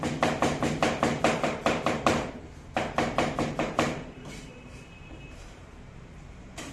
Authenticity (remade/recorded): remade